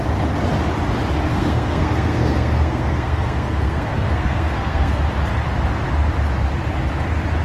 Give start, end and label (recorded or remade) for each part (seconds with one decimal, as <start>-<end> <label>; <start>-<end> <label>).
0.0-1.3 recorded; 1.3-5.0 remade; 5.0-7.4 recorded